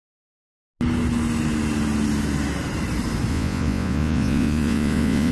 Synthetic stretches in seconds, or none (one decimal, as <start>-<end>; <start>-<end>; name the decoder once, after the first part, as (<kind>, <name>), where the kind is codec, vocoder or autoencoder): 3.3-5.3 (vocoder, Vocos)